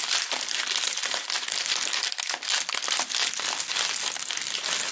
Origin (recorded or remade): recorded